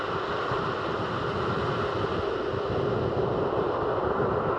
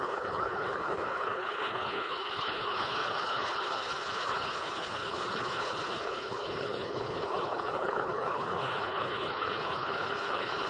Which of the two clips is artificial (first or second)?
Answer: second